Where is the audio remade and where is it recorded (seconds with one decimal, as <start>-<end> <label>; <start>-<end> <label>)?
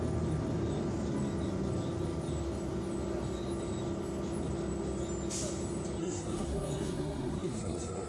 0.0-6.0 recorded; 6.0-8.1 remade